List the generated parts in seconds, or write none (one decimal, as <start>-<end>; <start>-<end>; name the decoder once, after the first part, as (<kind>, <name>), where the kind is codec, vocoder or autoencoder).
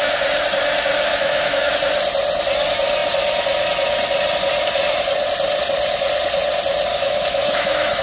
1.1-1.7 (autoencoder, DAC-VAE); 6.9-8.0